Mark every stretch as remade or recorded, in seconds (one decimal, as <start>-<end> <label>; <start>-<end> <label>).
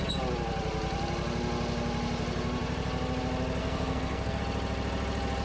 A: 0.0-3.6 recorded; 3.6-4.4 remade; 4.4-5.4 recorded